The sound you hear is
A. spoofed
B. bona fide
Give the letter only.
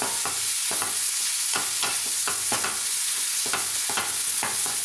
A